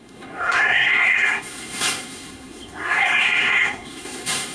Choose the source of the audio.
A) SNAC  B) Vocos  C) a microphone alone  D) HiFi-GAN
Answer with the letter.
A